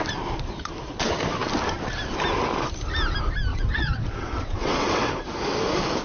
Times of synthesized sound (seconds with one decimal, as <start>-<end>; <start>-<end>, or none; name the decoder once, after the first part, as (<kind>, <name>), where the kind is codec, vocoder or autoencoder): 3.5-5.1 (vocoder, WaveNeXt)